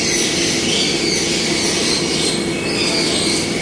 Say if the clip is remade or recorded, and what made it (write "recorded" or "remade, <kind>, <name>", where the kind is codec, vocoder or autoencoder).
recorded